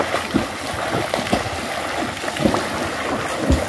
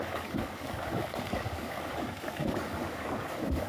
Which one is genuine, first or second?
first